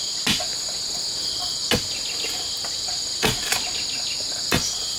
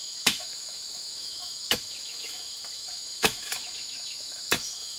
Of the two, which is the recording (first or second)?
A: first